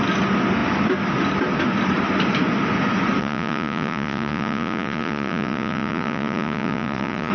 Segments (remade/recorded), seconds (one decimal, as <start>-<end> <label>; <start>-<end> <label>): 0.0-3.2 recorded; 3.2-7.3 remade